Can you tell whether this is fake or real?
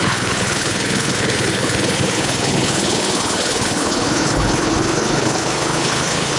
fake